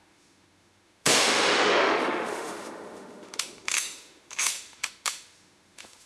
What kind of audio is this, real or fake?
fake